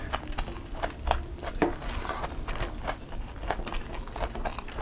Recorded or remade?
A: recorded